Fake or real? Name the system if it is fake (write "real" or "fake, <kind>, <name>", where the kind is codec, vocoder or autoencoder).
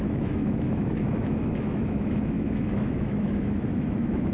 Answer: fake, autoencoder, DAC-VAE